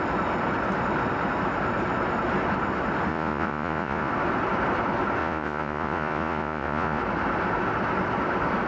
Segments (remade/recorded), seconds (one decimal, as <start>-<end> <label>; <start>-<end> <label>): 0.0-3.1 recorded; 3.1-4.1 remade; 4.1-5.2 recorded; 5.2-7.0 remade; 7.0-8.7 recorded